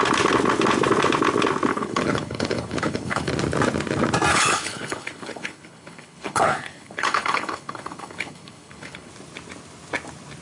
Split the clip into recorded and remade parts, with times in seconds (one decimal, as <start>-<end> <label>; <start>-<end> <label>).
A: 0.0-1.7 recorded; 1.7-3.3 remade; 3.3-4.3 recorded; 4.3-9.1 remade; 9.1-10.4 recorded